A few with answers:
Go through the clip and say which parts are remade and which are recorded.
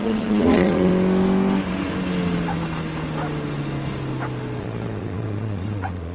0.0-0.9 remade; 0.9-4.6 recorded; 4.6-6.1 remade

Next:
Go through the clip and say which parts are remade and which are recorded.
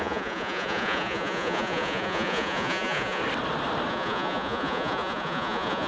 0.0-3.2 remade; 3.2-3.9 recorded; 3.9-5.9 remade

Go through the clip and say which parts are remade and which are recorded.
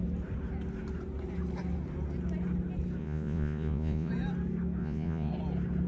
0.0-3.0 recorded; 3.0-4.1 remade; 4.1-4.8 recorded; 4.8-5.3 remade; 5.3-5.9 recorded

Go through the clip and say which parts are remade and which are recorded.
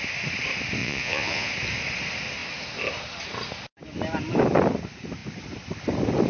0.0-0.8 recorded; 0.8-1.5 remade; 1.5-6.3 recorded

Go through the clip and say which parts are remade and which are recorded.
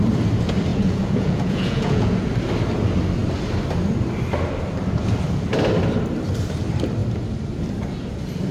0.0-0.7 recorded; 0.7-2.3 remade; 2.3-8.5 recorded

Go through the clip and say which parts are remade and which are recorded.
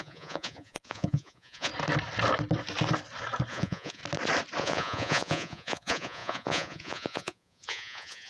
0.0-1.7 remade; 1.7-3.5 recorded; 3.5-4.0 remade; 4.0-4.6 recorded; 4.6-8.3 remade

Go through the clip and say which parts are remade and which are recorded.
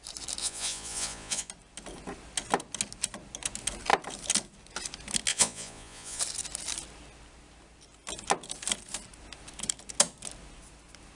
0.0-0.4 recorded; 0.4-1.5 remade; 1.5-5.3 recorded; 5.3-6.2 remade; 6.2-11.2 recorded